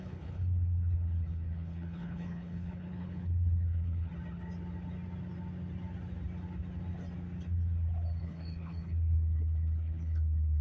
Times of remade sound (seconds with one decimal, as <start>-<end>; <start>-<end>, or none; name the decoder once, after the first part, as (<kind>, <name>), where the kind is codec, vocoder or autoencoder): 0.0-4.1 (codec, HILCodec); 8.2-10.6